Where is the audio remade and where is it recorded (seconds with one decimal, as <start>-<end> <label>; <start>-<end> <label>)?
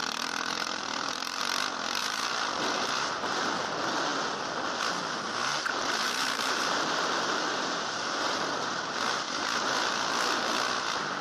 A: 0.0-1.4 remade; 1.4-2.0 recorded; 2.0-3.5 remade; 3.5-5.4 recorded; 5.4-9.0 remade; 9.0-11.2 recorded